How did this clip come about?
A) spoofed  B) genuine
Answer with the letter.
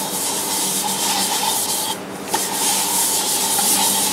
B